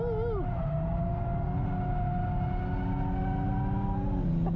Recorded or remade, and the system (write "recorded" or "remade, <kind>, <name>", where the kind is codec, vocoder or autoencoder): recorded